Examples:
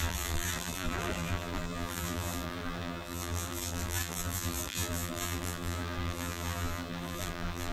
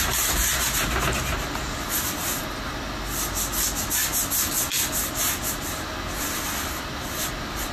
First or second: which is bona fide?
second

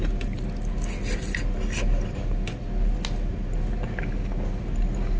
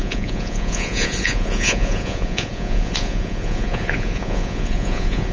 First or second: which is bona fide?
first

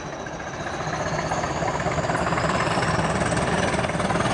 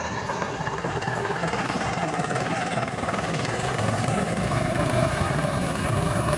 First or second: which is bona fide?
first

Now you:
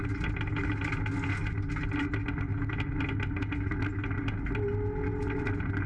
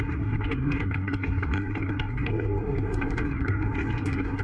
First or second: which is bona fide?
first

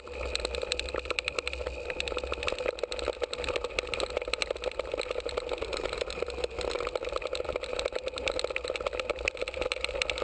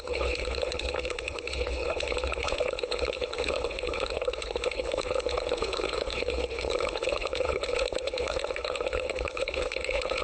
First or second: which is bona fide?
first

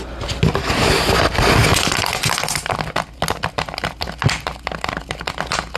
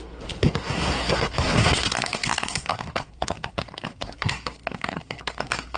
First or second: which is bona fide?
first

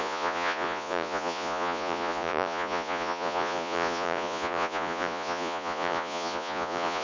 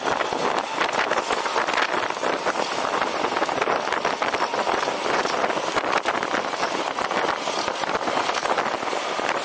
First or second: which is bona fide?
second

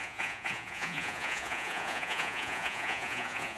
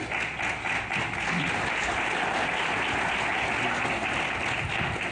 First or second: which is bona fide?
second